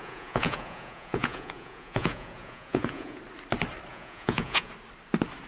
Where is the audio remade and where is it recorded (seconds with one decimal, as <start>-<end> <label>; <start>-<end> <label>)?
0.0-3.2 remade; 3.2-3.9 recorded; 3.9-4.7 remade; 4.7-5.5 recorded